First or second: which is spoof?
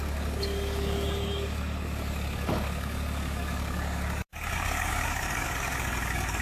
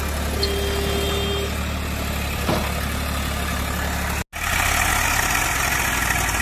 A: first